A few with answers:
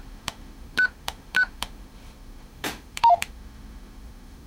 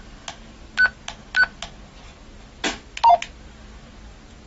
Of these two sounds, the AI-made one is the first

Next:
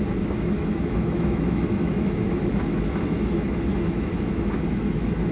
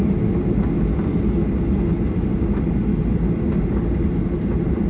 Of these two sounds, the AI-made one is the first